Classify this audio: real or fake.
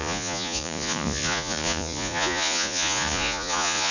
fake